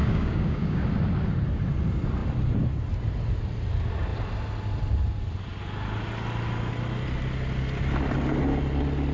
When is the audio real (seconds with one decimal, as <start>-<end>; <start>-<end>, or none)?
0.8-9.1